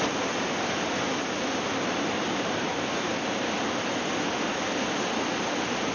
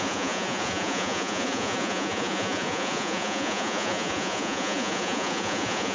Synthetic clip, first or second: second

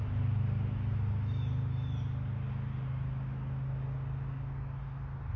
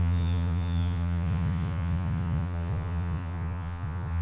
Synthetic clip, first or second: second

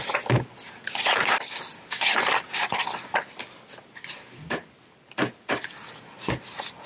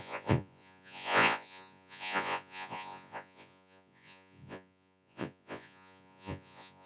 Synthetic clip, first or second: second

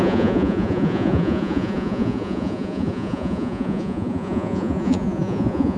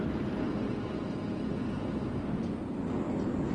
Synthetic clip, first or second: first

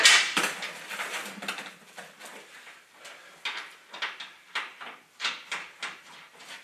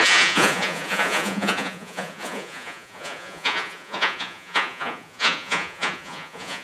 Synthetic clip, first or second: second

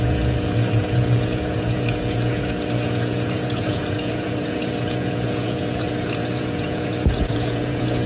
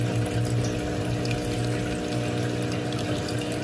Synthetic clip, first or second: first